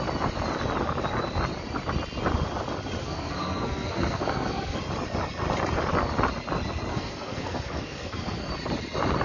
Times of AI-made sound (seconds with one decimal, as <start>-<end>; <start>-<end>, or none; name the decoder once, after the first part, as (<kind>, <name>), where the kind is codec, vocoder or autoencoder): 3.0-4.8 (codec, SNAC); 6.9-8.5